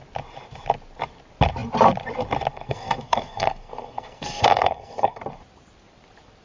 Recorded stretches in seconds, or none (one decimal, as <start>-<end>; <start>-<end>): 0.0-2.5; 5.2-6.4